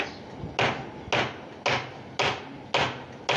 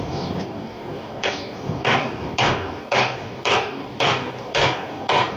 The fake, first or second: second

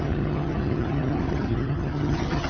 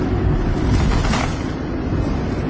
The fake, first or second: first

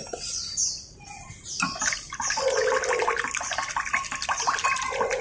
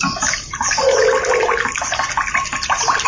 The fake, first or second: first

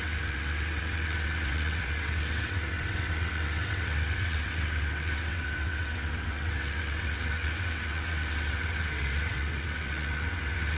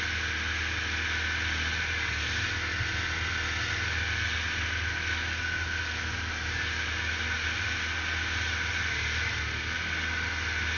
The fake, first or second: first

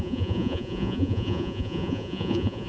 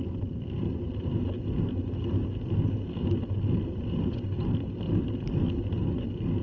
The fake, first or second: first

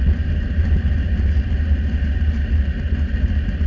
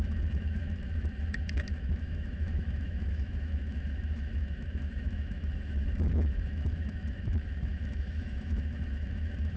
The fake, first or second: second